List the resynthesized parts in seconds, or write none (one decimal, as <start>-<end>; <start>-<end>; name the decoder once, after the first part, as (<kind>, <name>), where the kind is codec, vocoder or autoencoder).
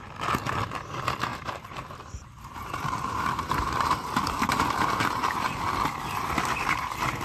1.3-5.6 (vocoder, BigVGAN v2)